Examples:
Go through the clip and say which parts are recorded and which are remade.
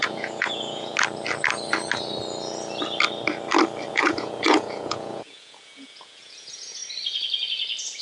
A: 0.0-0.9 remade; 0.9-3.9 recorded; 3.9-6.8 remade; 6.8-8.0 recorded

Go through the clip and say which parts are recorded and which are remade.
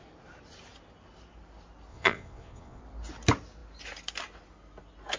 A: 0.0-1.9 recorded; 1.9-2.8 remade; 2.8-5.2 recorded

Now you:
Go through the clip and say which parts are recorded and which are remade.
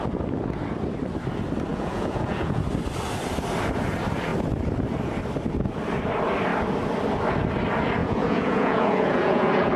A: 0.0-1.7 recorded; 1.7-2.6 remade; 2.6-8.0 recorded; 8.0-9.8 remade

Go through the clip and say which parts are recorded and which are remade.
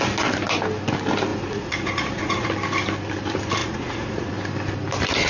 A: 0.0-1.3 recorded; 1.3-2.5 remade; 2.5-3.6 recorded; 3.6-4.3 remade; 4.3-5.3 recorded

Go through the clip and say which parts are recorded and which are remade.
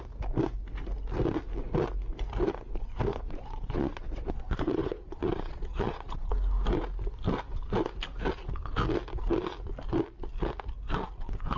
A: 0.0-3.1 recorded; 3.1-6.3 remade; 6.3-11.6 recorded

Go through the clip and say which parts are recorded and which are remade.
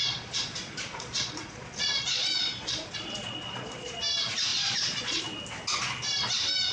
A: 0.0-4.0 remade; 4.0-4.5 recorded; 4.5-5.2 remade; 5.2-6.7 recorded